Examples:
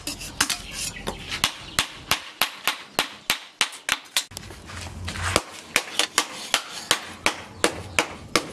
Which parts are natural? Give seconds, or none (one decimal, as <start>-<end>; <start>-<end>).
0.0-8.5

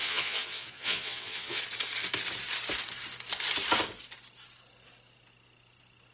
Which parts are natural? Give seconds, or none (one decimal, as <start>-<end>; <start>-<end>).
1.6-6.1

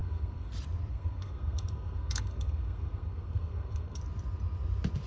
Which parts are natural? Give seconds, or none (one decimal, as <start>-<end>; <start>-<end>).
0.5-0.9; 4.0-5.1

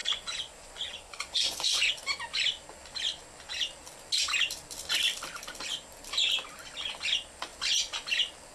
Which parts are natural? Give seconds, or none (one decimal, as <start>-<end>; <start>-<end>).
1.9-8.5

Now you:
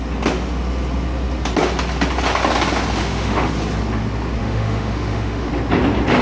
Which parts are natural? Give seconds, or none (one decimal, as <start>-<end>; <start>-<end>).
0.0-3.0; 3.5-4.4; 5.5-6.2